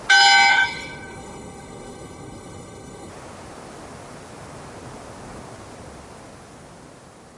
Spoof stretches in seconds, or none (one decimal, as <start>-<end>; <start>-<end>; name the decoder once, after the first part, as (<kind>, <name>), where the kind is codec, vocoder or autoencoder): 0.5-3.1 (codec, HILCodec)

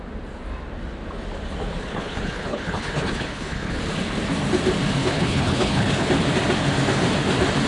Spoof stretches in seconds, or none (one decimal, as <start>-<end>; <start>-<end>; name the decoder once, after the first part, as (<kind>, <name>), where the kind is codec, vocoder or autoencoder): 1.8-3.8 (codec, HILCodec); 5.0-6.1

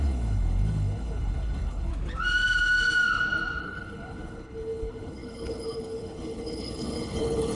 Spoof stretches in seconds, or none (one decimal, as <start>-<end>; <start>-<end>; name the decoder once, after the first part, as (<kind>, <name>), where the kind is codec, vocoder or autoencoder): 0.0-1.9 (codec, HILCodec); 3.6-7.5

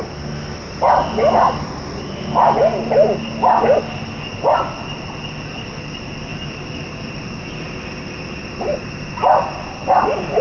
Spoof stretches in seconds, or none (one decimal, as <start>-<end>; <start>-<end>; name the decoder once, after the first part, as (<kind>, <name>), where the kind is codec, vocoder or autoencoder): none

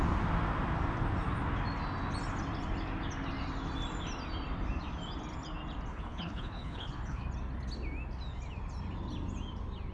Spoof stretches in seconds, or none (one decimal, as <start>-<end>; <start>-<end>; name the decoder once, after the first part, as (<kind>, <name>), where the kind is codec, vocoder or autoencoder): 5.9-7.2 (codec, HILCodec)

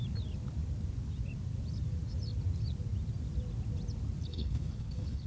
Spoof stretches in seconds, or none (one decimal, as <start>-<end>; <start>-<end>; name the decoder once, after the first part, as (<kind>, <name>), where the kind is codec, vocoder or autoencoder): 4.3-5.3 (codec, HILCodec)